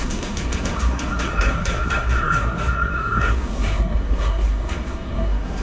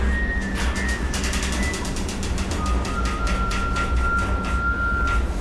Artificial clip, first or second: first